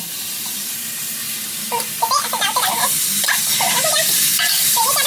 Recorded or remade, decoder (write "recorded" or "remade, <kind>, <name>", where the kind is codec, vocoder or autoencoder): remade, vocoder, BigVGAN v2